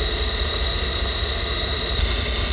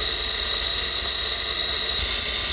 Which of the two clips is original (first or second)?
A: second